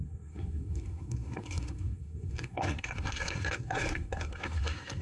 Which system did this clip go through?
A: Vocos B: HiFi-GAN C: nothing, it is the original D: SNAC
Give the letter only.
D